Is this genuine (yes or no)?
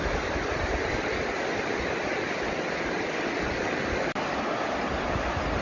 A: yes